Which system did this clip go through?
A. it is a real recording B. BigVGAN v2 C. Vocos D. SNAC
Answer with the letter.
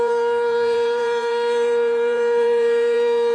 B